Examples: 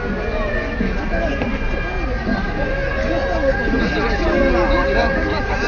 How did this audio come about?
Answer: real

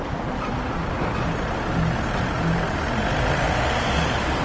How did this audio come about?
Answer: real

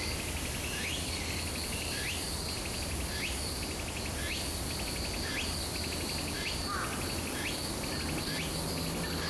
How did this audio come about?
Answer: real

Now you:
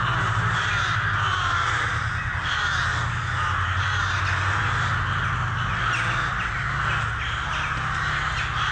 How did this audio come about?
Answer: real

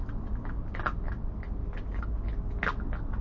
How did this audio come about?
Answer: real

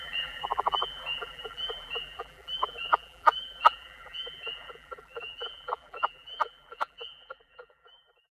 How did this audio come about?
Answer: fake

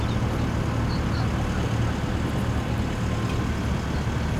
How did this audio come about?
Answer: real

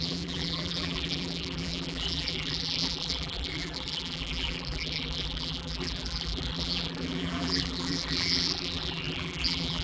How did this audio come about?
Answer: fake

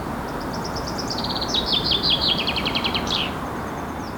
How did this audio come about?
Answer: fake